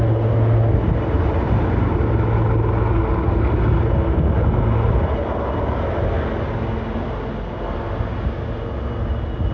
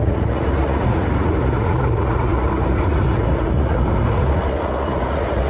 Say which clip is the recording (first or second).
first